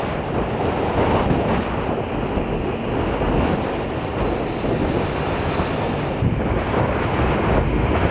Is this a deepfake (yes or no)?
no